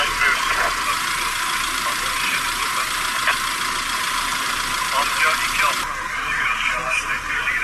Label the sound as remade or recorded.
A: remade